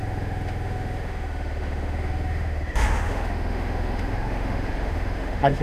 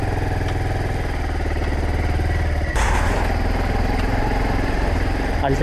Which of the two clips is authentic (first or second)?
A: second